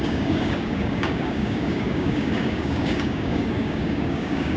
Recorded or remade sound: remade